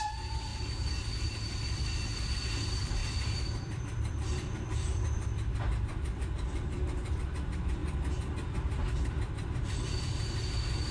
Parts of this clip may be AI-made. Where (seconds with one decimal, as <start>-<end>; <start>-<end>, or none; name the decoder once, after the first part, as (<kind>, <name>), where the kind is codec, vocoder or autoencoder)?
0.0-0.5 (vocoder, BigVGAN v2); 1.2-10.9